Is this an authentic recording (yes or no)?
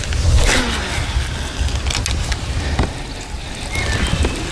yes